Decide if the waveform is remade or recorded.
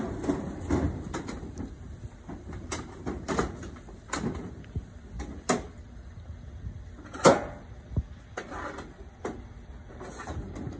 recorded